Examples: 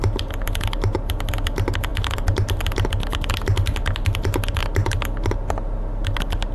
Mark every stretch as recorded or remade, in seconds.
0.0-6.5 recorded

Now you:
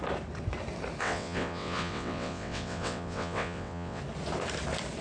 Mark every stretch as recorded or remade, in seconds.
0.0-1.0 recorded; 1.0-4.0 remade; 4.0-5.0 recorded

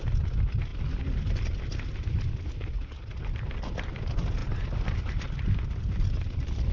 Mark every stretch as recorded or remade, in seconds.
0.0-6.7 recorded

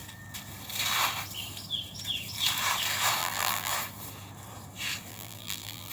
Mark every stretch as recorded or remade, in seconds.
0.0-3.2 recorded; 3.2-3.7 remade; 3.7-5.1 recorded; 5.1-5.9 remade